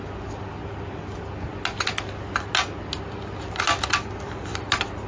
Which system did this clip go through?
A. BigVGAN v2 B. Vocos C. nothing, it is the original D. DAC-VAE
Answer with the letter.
C